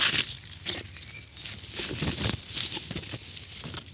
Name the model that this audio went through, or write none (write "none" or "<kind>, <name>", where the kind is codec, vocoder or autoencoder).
none